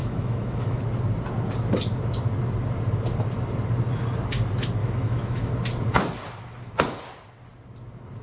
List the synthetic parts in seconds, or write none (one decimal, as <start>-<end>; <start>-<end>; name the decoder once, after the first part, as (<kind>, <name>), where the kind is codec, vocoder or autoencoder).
0.0-0.8 (autoencoder, DAC-VAE); 4.8-5.5